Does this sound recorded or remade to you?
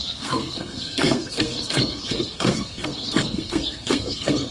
remade